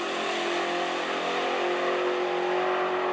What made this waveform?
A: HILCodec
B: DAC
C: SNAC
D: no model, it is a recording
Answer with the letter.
D